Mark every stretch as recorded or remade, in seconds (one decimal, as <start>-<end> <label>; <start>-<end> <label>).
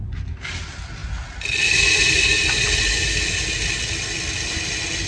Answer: 0.0-5.1 recorded